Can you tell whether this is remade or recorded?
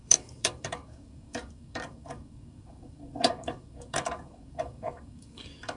remade